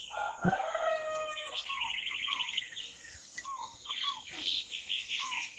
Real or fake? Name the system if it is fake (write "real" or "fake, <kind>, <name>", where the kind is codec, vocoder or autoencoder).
fake, codec, SNAC